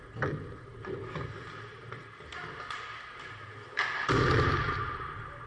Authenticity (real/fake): fake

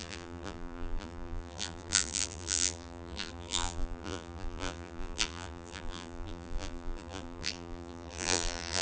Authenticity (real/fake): fake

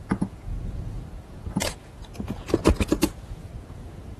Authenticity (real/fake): fake